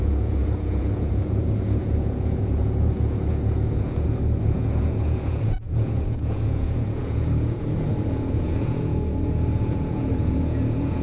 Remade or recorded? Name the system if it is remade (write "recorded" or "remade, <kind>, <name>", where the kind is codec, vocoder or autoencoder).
remade, vocoder, Vocos